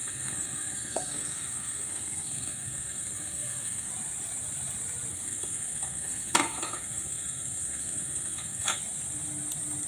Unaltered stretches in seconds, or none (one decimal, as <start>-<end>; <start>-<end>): 3.9-5.1; 8.8-9.9

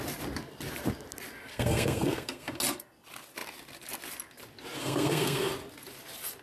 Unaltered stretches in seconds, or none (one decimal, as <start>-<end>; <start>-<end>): 0.0-1.5; 2.6-4.8; 5.5-6.4

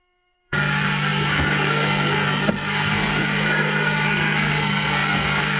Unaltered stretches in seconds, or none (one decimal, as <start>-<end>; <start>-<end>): none